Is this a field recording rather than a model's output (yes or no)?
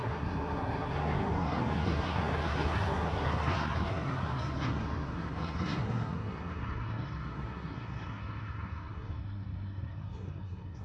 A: no